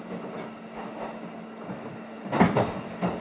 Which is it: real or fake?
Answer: real